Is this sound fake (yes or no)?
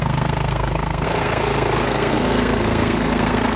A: yes